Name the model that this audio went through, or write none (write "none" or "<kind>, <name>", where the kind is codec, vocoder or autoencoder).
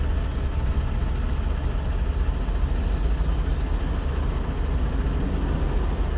none